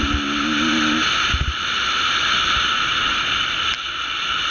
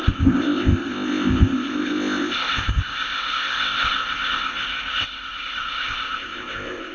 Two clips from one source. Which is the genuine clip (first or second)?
first